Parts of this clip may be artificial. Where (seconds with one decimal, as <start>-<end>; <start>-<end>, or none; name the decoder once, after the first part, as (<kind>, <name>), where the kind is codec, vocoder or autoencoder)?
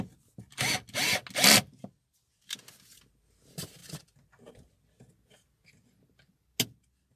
none